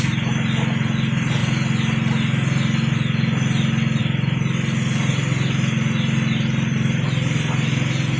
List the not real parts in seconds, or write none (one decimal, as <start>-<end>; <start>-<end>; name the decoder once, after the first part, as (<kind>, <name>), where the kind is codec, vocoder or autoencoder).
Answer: none